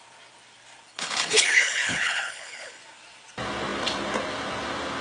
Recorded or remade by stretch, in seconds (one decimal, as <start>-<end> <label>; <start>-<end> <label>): 0.0-0.9 recorded; 0.9-2.8 remade; 2.8-5.0 recorded